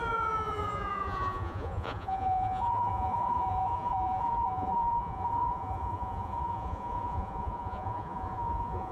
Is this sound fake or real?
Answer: fake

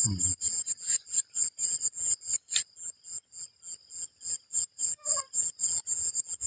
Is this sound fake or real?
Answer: real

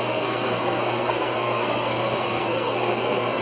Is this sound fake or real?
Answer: fake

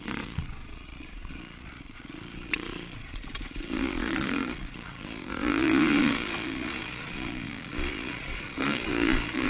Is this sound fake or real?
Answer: fake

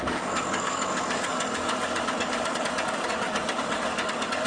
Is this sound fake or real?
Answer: fake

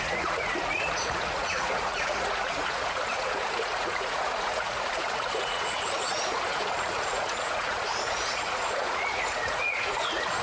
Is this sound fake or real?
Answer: fake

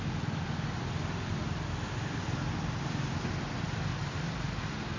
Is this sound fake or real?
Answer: real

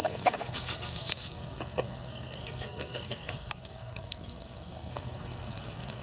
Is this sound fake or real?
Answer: fake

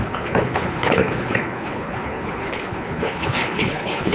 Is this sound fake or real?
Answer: fake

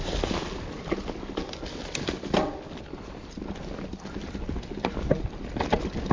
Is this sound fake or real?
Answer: real